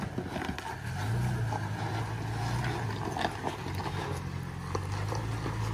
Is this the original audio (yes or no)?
yes